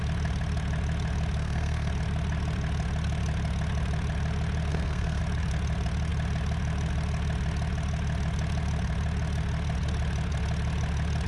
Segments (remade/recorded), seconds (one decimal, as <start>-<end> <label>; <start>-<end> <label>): 0.0-1.4 recorded; 1.4-1.9 remade; 1.9-4.7 recorded; 4.7-5.2 remade; 5.2-11.3 recorded